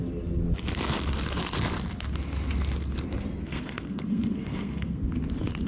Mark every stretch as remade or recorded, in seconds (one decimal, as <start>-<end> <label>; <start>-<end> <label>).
0.0-3.4 recorded; 3.4-5.0 remade; 5.0-5.7 recorded